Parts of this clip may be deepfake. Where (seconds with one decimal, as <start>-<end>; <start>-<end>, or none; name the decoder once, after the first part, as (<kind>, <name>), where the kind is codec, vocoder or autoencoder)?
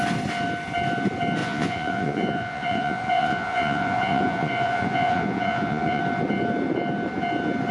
1.4-6.0 (vocoder, Vocos)